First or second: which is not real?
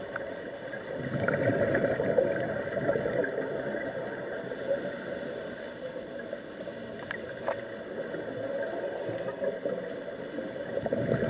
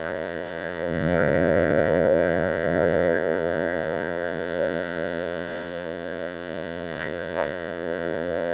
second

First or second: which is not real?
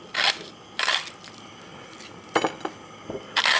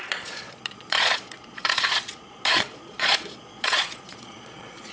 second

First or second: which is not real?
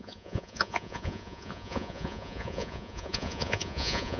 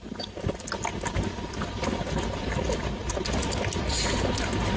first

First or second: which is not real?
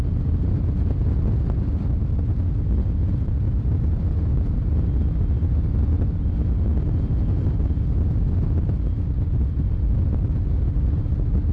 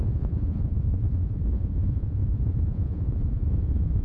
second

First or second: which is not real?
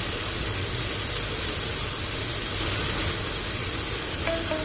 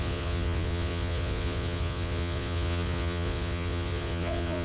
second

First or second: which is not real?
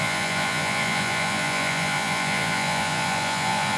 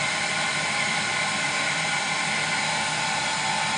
first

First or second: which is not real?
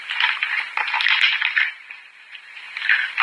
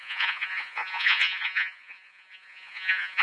second